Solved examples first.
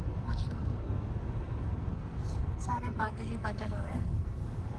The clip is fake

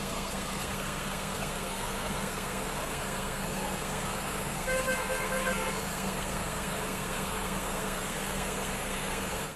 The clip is fake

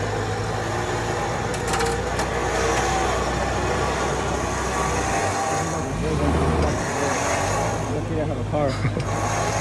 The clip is real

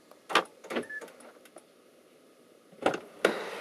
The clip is real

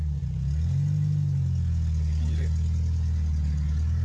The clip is real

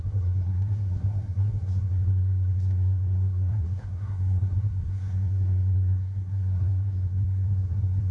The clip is fake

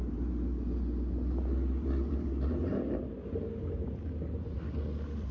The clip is real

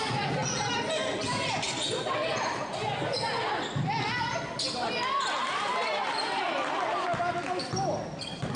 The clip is real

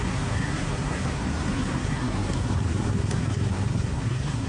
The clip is fake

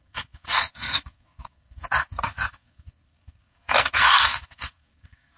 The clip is fake